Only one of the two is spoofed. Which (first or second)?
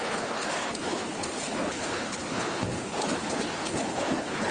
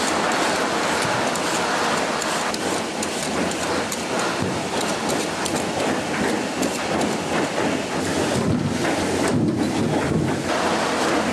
first